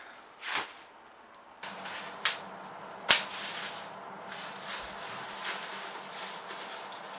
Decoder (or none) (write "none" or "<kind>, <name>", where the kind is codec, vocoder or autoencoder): none